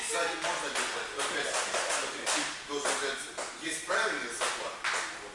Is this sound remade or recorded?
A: recorded